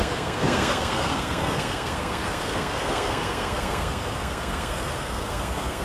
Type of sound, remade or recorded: remade